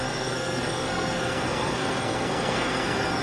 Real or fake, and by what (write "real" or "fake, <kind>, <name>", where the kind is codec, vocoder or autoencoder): fake, codec, SNAC